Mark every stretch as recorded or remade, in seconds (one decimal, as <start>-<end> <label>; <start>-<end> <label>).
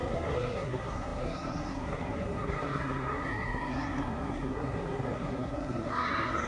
0.0-6.5 remade